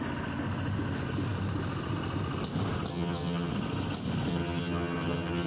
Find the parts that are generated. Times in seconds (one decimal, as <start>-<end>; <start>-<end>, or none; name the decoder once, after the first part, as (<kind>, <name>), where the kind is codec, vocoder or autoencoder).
2.9-3.5 (vocoder, HiFi-GAN); 4.3-5.5

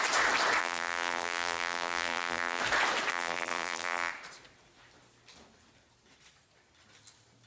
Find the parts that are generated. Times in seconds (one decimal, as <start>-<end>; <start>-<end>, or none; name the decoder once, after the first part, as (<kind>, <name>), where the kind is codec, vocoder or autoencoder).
0.6-2.6 (vocoder, BigVGAN v2); 3.1-4.1